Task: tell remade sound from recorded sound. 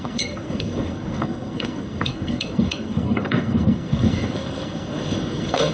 remade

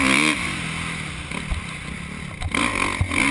recorded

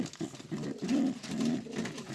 recorded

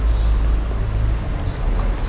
recorded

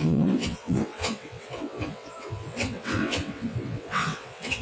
remade